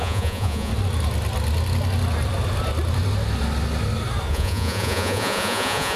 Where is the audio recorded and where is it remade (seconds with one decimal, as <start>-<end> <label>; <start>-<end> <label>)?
0.0-0.7 remade; 0.7-4.3 recorded; 4.3-6.0 remade